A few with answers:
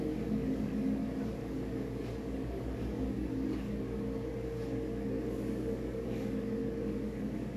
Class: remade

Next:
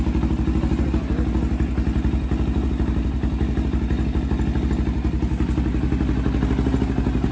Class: recorded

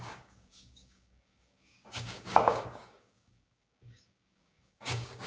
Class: remade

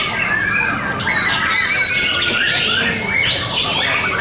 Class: recorded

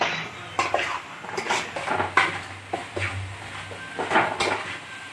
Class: recorded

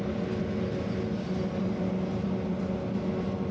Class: recorded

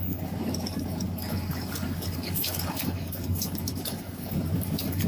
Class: remade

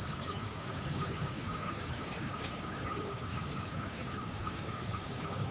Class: remade